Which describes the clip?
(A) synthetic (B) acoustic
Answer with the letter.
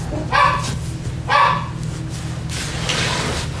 B